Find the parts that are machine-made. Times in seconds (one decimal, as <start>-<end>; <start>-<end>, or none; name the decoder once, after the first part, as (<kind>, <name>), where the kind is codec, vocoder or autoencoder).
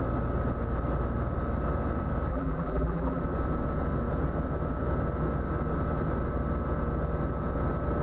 2.3-3.2 (vocoder, BigVGAN v2)